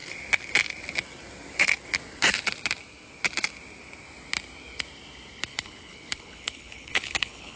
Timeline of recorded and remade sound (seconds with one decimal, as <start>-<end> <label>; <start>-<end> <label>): 0.0-5.5 recorded; 5.5-7.6 remade

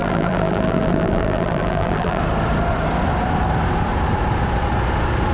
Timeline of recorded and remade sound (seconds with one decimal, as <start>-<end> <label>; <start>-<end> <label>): 0.0-2.2 remade; 2.2-5.3 recorded

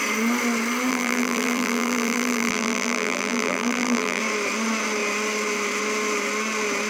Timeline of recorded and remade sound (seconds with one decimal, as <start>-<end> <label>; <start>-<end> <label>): 0.0-0.9 recorded; 0.9-4.2 remade; 4.2-6.9 recorded

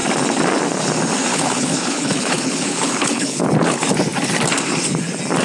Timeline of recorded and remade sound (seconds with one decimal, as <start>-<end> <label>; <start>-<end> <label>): 0.0-1.3 recorded; 1.3-3.5 remade; 3.5-5.4 recorded

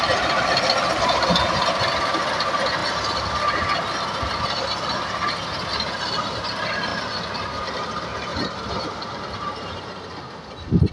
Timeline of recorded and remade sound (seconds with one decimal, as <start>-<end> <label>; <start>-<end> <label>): 0.0-8.3 recorded; 8.3-10.5 remade; 10.5-10.9 recorded

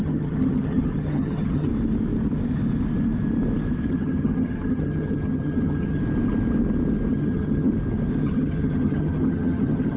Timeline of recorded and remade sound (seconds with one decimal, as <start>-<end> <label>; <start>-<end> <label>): 0.0-1.7 remade; 1.7-3.9 recorded; 3.9-6.0 remade; 6.0-7.1 recorded; 7.1-7.7 remade; 7.7-8.2 recorded; 8.2-10.0 remade